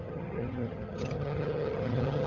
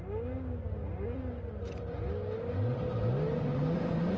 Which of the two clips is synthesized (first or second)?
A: first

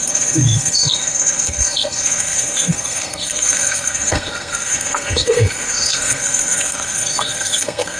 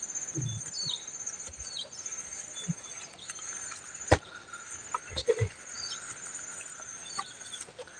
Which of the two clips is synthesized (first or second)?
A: first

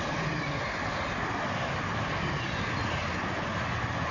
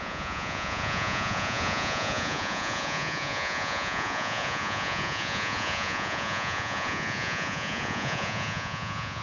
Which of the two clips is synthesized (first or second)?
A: second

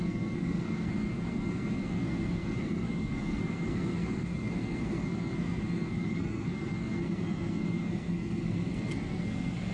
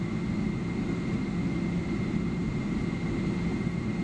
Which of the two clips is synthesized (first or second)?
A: first